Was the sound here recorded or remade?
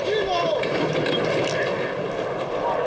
recorded